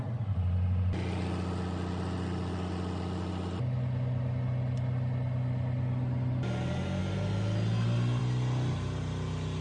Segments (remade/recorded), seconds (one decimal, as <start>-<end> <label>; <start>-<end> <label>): 0.0-9.6 recorded